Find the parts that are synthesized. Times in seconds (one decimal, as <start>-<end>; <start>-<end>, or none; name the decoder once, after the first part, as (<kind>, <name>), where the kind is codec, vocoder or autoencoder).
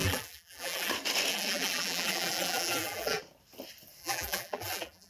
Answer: 0.0-0.9 (vocoder, BigVGAN v2); 1.3-3.2; 4.0-5.1